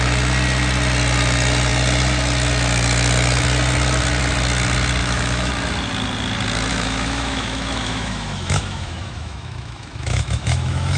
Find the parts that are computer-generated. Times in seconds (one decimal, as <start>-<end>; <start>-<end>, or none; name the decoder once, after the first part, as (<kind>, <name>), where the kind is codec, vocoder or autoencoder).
5.0-5.5 (autoencoder, DAC-VAE); 6.7-11.0